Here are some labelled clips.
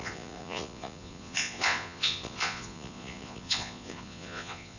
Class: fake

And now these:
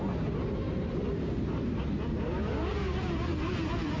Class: fake